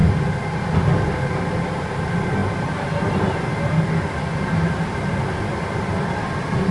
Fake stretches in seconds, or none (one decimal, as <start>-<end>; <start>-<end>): none